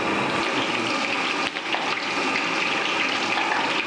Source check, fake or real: real